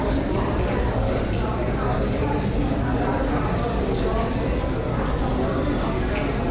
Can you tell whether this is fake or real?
real